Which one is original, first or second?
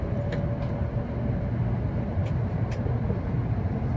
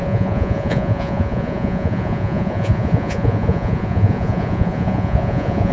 first